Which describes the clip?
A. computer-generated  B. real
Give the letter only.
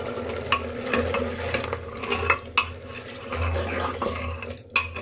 B